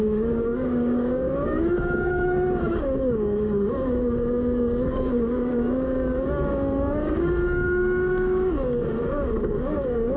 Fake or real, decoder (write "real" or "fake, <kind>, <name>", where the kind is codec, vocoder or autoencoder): fake, codec, DAC